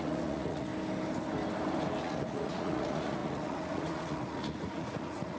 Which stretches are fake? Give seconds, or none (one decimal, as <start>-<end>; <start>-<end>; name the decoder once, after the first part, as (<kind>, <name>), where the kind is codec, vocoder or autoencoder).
0.0-0.7 (vocoder, Vocos); 2.0-5.4